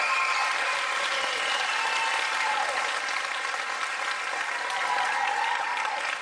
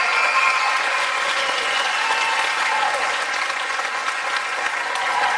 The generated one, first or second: second